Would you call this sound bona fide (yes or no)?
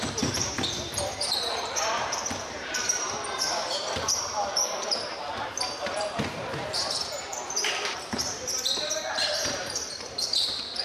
no